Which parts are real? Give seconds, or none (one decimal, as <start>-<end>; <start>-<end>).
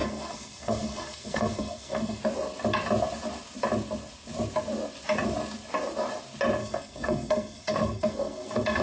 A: 2.2-6.6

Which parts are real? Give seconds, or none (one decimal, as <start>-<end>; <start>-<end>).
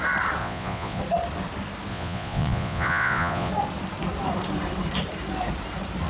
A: 0.0-0.4; 1.0-1.9; 3.5-6.1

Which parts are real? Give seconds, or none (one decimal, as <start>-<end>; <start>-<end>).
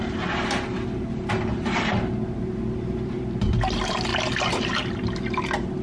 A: 0.0-5.8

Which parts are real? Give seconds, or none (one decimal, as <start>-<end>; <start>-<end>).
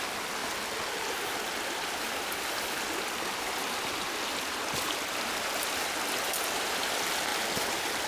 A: 0.0-8.1